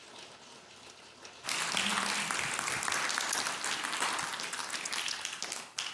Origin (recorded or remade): recorded